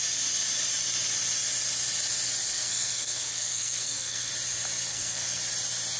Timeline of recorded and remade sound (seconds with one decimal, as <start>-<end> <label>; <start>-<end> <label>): 0.0-2.5 recorded; 2.5-4.3 remade; 4.3-4.9 recorded; 4.9-5.4 remade; 5.4-6.0 recorded